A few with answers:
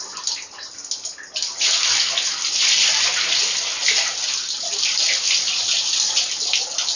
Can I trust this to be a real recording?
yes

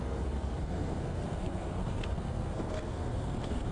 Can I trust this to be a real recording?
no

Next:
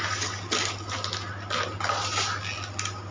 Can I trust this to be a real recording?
yes